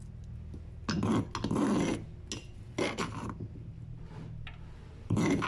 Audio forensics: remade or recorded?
recorded